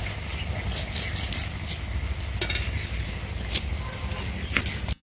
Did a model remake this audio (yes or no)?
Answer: no